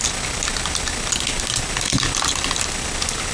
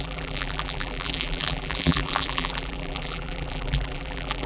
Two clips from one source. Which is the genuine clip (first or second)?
first